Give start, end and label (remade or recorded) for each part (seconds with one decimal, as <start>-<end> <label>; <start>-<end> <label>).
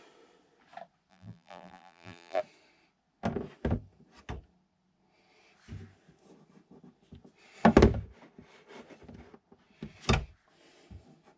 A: 0.0-1.1 recorded; 1.1-2.4 remade; 2.4-11.4 recorded